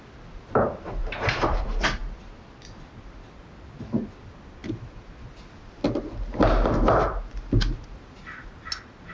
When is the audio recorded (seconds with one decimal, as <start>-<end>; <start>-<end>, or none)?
0.0-1.0; 2.2-9.1